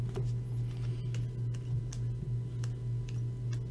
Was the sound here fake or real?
real